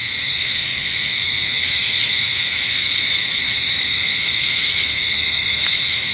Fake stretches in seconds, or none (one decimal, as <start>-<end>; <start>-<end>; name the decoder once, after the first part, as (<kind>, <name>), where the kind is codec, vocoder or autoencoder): 0.0-6.1 (autoencoder, DAC-VAE)